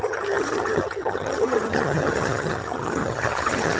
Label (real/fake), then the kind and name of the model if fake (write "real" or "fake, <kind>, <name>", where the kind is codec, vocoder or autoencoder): fake, vocoder, HiFi-GAN